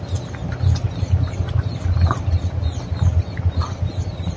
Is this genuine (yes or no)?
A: yes